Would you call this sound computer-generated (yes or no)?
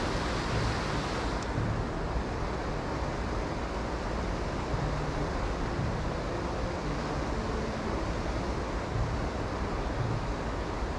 no